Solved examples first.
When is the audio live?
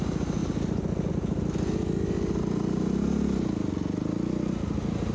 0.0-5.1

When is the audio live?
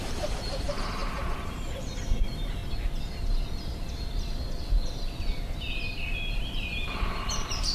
2.6-6.3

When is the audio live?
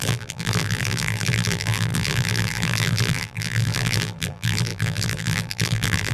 none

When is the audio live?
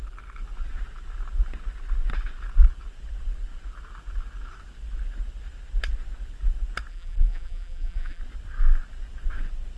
0.0-6.9; 8.2-9.8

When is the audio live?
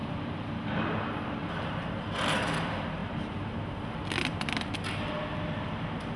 0.5-1.4; 2.0-6.2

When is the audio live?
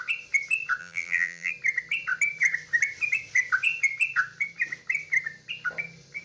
0.0-0.8; 1.5-6.2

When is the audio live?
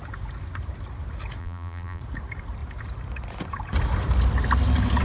0.0-1.4; 2.0-5.0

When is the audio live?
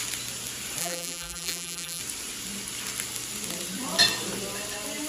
0.0-0.8; 2.0-5.1